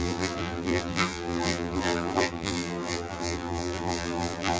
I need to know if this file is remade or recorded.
remade